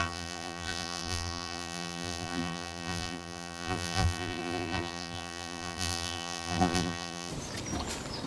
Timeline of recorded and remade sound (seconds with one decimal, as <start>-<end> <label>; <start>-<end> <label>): 0.0-7.3 remade; 7.3-8.3 recorded